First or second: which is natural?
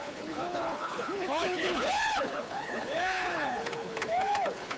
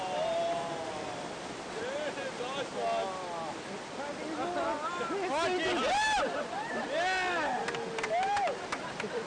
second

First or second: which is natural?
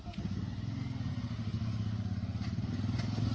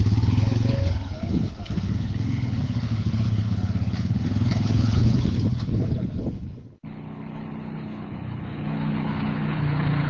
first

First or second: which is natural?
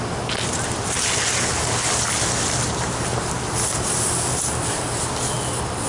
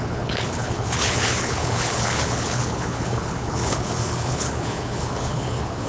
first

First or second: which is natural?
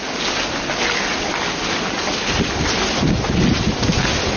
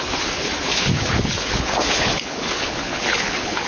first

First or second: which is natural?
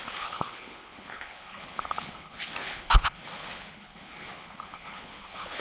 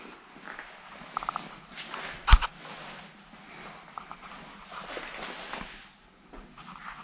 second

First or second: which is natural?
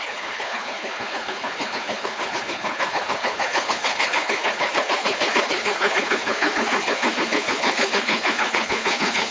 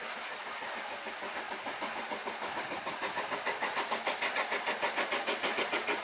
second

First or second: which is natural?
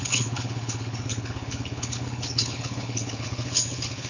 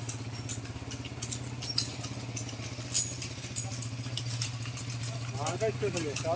second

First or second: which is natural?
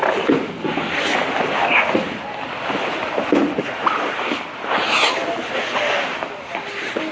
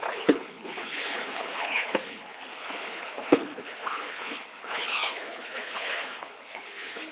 first